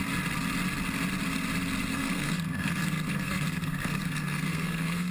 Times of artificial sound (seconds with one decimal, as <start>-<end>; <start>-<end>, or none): 1.9-5.1